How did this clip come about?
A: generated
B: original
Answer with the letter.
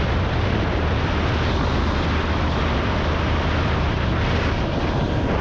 B